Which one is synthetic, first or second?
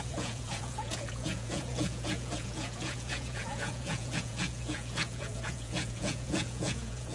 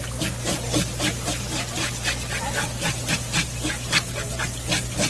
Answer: first